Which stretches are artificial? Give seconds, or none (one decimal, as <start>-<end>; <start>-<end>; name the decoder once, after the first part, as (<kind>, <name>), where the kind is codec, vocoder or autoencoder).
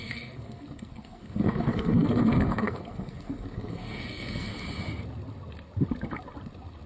0.0-4.5 (codec, SNAC)